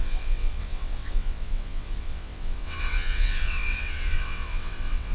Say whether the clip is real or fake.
fake